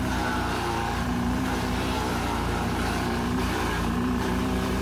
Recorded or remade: remade